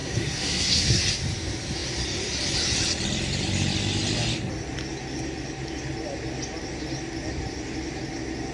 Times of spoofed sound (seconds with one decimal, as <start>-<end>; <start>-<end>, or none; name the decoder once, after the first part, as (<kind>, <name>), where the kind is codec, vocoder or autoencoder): 0.0-1.0 (codec, SNAC)